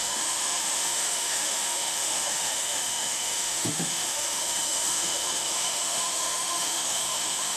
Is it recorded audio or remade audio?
remade